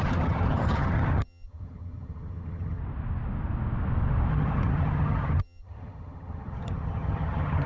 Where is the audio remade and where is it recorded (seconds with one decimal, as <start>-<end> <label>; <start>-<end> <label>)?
0.0-2.8 remade; 2.8-4.3 recorded; 4.3-7.7 remade